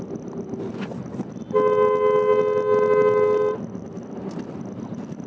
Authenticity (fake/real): real